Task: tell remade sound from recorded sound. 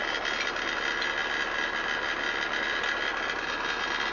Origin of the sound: recorded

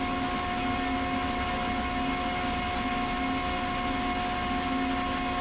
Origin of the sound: recorded